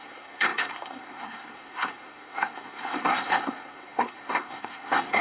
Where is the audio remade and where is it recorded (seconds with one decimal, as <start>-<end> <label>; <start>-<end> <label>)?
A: 0.0-5.2 remade